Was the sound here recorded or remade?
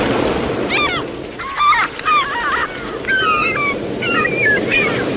recorded